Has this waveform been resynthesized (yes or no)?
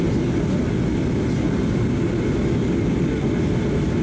no